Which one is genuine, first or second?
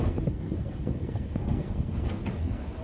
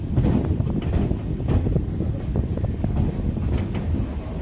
second